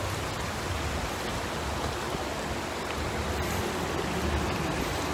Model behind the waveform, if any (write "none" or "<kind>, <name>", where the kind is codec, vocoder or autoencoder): none